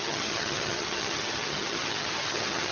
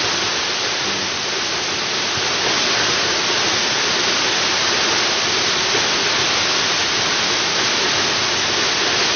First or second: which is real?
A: second